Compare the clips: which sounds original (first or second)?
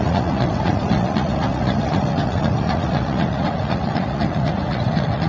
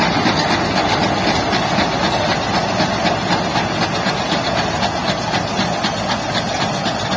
second